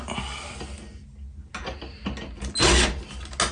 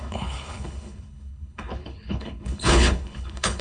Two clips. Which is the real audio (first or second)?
first